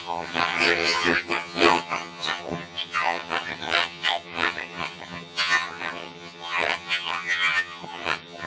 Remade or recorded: remade